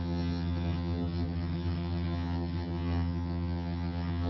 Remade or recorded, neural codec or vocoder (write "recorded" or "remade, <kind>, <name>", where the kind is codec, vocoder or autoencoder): remade, vocoder, HiFi-GAN